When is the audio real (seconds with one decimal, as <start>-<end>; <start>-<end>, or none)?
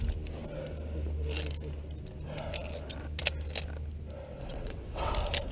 0.0-4.3; 5.1-5.5